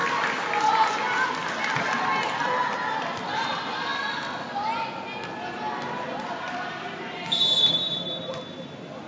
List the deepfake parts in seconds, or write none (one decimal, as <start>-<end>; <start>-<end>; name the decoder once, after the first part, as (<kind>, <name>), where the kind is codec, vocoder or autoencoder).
none